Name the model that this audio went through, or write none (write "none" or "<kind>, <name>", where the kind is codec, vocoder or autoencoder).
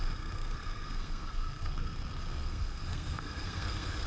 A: codec, SNAC